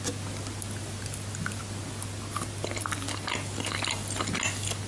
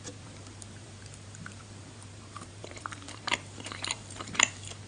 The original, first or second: first